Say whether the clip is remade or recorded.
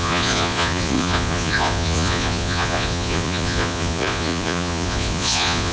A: remade